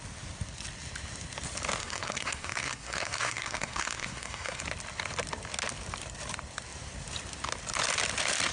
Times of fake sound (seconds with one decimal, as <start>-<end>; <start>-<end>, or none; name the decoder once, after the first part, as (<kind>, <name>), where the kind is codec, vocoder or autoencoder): 1.8-4.6 (codec, SNAC)